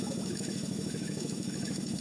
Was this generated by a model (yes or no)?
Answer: yes